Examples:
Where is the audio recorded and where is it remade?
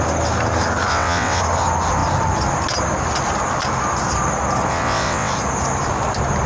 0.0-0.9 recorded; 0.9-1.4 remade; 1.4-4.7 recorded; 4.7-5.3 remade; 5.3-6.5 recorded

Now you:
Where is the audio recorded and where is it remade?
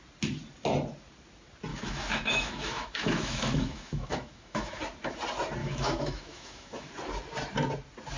0.0-1.7 recorded; 1.7-4.8 remade; 4.8-5.6 recorded; 5.6-6.9 remade; 6.9-8.2 recorded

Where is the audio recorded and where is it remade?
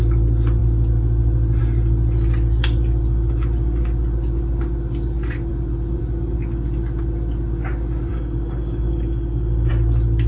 0.0-8.1 recorded; 8.1-9.7 remade; 9.7-10.3 recorded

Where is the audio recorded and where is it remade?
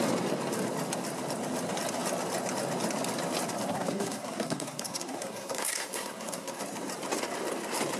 0.0-3.7 recorded; 3.7-6.6 remade; 6.6-8.0 recorded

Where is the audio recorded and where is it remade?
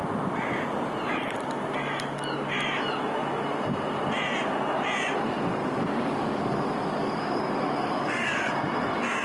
0.0-5.6 recorded; 5.6-8.5 remade; 8.5-9.2 recorded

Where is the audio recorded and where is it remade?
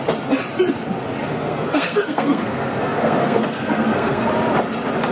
0.0-1.2 recorded; 1.2-4.3 remade; 4.3-5.1 recorded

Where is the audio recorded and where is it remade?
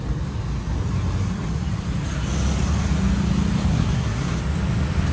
0.0-3.7 recorded; 3.7-4.4 remade; 4.4-5.1 recorded